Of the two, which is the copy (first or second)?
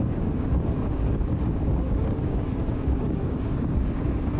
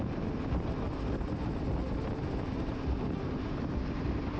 first